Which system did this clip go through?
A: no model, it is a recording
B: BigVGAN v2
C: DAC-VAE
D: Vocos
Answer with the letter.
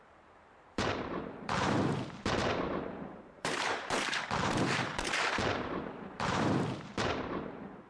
B